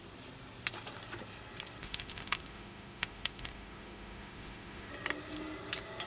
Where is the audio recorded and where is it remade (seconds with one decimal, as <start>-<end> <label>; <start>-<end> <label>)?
0.0-1.8 recorded; 1.8-4.9 remade; 4.9-6.1 recorded

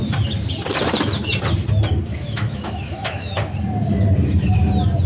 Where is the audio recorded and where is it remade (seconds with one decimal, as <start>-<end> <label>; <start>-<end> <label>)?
0.0-2.1 recorded; 2.1-3.5 remade; 3.5-5.1 recorded

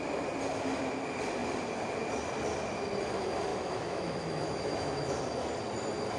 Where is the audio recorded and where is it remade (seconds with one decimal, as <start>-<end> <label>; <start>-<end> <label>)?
0.0-3.5 recorded; 3.5-5.2 remade; 5.2-6.2 recorded

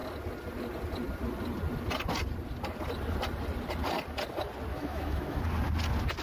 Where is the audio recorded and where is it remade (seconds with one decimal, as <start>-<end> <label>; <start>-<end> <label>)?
0.0-4.7 recorded; 4.7-5.4 remade; 5.4-6.2 recorded

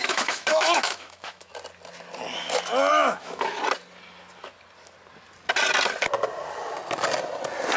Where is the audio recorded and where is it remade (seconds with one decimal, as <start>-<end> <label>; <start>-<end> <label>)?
0.0-1.5 remade; 1.5-2.9 recorded; 2.9-3.6 remade; 3.6-7.8 recorded

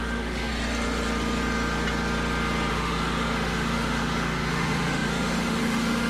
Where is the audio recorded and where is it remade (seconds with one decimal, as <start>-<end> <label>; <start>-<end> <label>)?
0.0-0.5 remade; 0.5-2.7 recorded; 2.7-6.1 remade

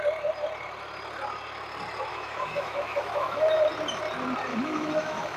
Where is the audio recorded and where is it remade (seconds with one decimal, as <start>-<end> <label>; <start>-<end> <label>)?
0.0-2.1 recorded; 2.1-3.7 remade; 3.7-4.5 recorded; 4.5-5.4 remade